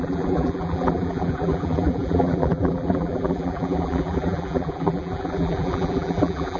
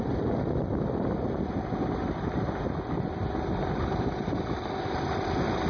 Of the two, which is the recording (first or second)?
second